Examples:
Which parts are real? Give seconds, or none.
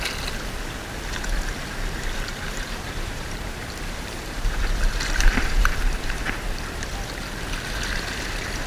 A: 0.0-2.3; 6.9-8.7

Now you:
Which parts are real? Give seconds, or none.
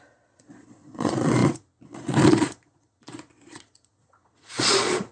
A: none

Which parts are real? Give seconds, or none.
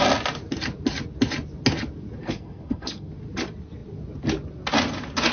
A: 0.0-2.2; 3.1-5.3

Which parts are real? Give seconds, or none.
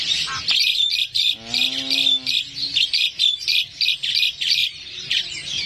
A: 0.0-4.6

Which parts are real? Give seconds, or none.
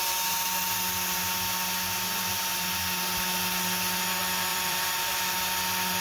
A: 0.0-4.5; 5.0-6.0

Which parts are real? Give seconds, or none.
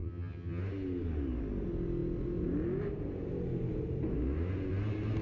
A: 0.6-5.2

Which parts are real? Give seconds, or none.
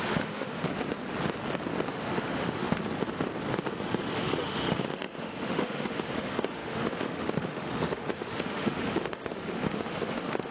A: 0.6-1.9; 2.8-4.0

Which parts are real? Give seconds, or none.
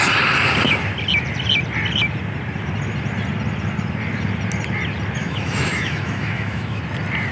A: 0.0-5.2; 6.8-7.3